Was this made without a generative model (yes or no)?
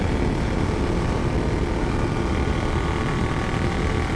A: yes